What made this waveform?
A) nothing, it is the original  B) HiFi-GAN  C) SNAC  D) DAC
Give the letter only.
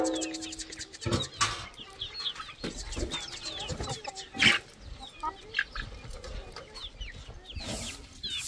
A